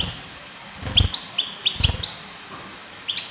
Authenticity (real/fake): real